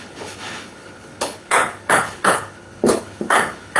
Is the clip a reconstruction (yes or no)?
yes